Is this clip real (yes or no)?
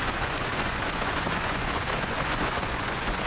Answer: no